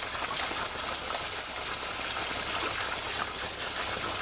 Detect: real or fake real